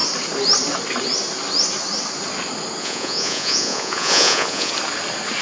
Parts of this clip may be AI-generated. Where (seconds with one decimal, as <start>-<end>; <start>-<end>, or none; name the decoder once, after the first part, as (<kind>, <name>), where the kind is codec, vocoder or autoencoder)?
2.8-4.7 (vocoder, Vocos)